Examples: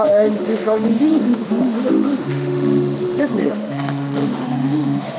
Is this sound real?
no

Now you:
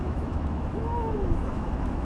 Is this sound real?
no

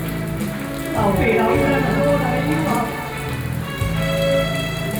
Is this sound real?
yes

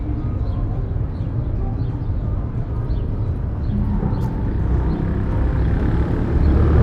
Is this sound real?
yes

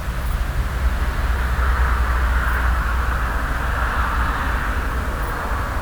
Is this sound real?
yes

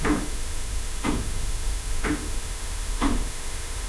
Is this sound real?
no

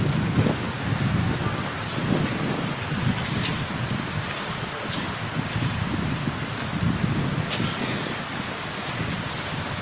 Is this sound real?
yes